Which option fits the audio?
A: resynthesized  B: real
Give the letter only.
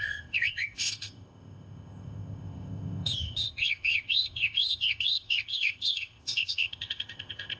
A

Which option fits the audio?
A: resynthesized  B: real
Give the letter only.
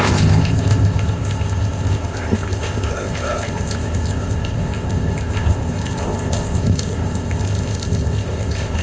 A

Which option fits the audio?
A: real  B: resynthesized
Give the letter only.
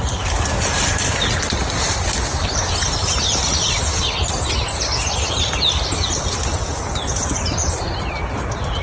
A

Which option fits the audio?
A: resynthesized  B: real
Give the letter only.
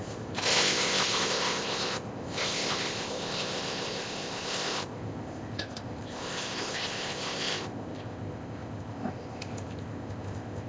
A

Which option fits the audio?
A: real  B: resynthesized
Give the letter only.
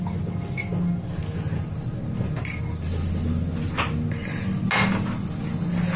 A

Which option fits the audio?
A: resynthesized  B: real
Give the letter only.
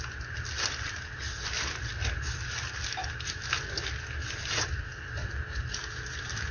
B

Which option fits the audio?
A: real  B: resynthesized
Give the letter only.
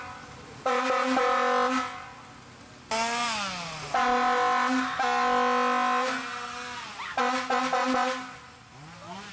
A